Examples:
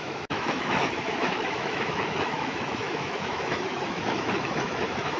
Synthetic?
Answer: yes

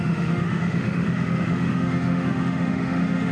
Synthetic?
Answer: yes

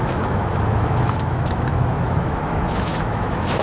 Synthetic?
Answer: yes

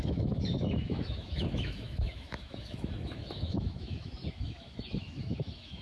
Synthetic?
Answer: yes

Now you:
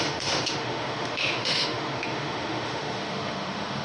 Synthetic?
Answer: yes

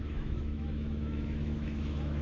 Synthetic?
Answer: yes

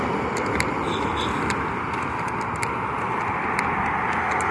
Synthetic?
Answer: no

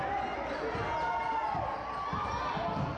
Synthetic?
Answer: no